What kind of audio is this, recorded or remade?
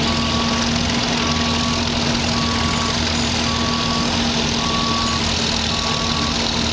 recorded